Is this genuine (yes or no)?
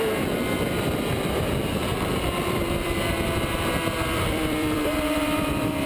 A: no